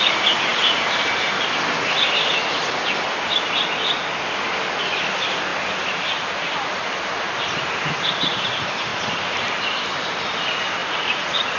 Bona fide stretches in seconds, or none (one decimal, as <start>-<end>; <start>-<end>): 0.0-10.8